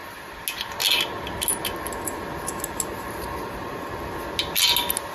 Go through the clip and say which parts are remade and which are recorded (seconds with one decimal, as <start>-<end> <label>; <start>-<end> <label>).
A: 0.0-5.1 recorded